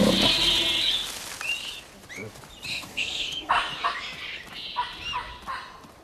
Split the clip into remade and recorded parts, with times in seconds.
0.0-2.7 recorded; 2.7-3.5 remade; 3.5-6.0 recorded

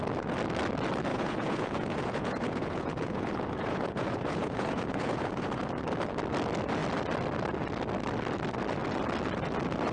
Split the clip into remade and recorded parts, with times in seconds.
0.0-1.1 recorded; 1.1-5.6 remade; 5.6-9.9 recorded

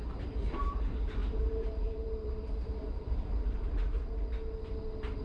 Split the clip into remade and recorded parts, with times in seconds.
0.0-4.0 remade; 4.0-5.2 recorded

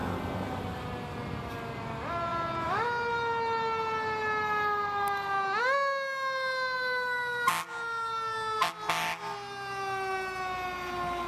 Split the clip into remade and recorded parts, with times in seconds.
0.0-11.3 recorded

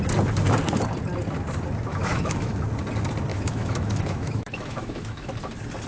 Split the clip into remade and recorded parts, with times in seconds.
0.0-1.9 recorded; 1.9-2.6 remade; 2.6-3.3 recorded; 3.3-5.3 remade; 5.3-5.9 recorded

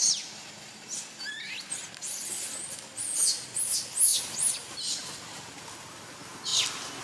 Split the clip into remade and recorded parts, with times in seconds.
0.0-7.0 recorded